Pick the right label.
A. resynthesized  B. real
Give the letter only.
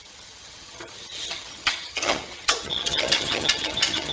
A